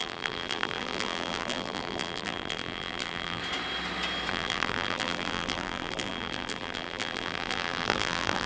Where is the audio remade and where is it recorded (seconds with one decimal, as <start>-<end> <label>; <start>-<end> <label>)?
0.0-3.4 remade; 3.4-4.3 recorded; 4.3-8.5 remade